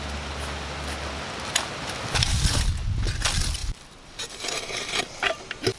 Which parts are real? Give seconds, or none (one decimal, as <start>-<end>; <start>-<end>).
0.0-3.6; 4.2-5.8